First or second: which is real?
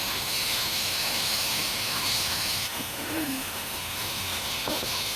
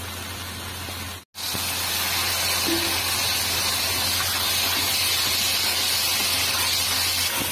second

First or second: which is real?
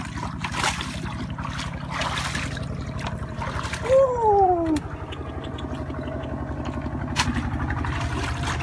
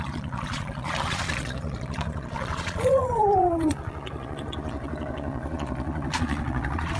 first